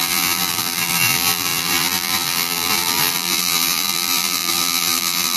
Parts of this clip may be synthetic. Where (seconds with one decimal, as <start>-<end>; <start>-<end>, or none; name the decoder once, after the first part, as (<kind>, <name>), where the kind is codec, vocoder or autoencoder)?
0.0-5.4 (vocoder, BigVGAN v2)